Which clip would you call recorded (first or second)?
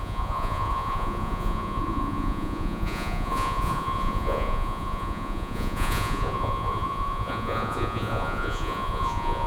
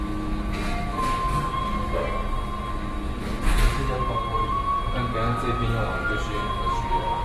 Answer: second